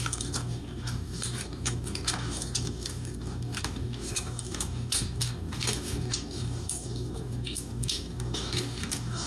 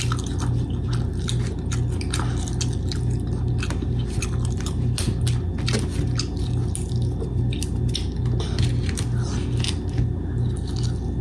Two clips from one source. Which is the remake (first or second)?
first